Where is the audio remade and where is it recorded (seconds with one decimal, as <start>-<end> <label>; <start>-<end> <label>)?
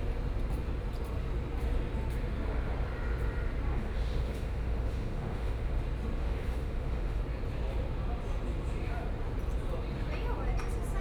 0.0-3.7 recorded; 3.7-5.8 remade; 5.8-6.2 recorded; 6.2-7.2 remade; 7.2-11.0 recorded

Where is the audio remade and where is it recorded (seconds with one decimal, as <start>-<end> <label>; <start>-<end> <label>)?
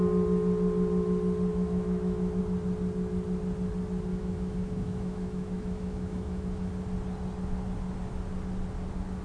0.0-1.5 recorded; 1.5-2.4 remade; 2.4-4.1 recorded; 4.1-6.7 remade; 6.7-9.2 recorded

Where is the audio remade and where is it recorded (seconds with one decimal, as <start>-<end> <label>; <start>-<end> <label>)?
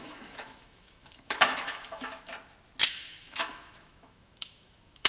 0.0-2.3 remade; 2.3-2.9 recorded; 2.9-5.1 remade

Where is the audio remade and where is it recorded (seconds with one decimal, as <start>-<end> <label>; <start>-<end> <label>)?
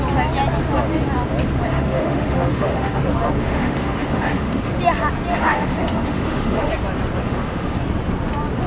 0.0-1.7 recorded; 1.7-3.0 remade; 3.0-3.4 recorded; 3.4-4.7 remade; 4.7-5.3 recorded; 5.3-6.7 remade; 6.7-7.2 recorded; 7.2-7.8 remade; 7.8-8.7 recorded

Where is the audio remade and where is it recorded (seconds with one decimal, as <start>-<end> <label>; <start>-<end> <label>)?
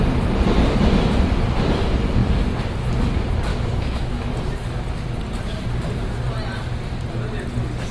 0.0-3.5 recorded; 3.5-4.3 remade; 4.3-7.9 recorded